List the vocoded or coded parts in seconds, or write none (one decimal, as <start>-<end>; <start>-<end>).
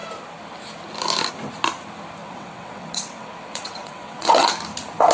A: 2.2-4.5